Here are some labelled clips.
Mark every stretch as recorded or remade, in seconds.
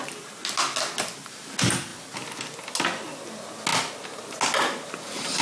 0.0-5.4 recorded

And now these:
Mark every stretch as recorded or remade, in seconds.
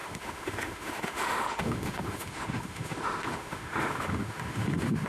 0.0-5.1 remade